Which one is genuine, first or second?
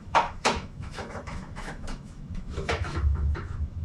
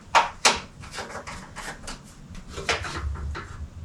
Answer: second